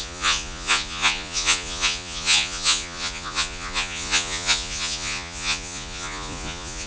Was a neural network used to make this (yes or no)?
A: yes